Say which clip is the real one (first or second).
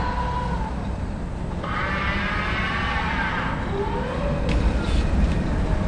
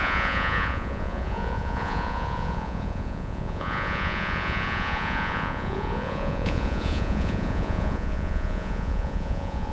first